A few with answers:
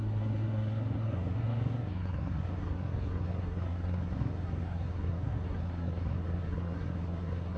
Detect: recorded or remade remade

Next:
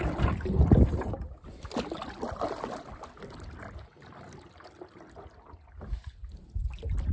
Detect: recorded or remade recorded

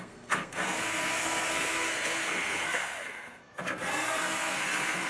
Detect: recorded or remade remade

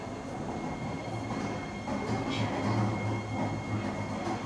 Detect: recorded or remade recorded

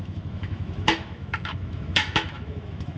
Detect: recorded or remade remade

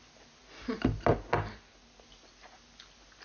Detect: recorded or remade recorded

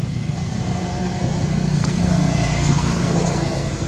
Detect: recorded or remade remade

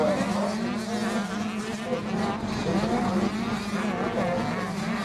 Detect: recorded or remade recorded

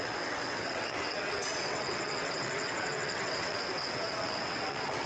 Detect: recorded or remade remade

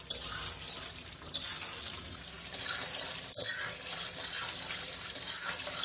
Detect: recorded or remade recorded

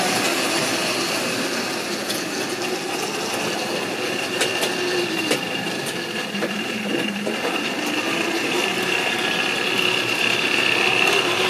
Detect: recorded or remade recorded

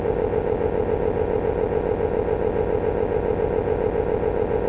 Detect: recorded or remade recorded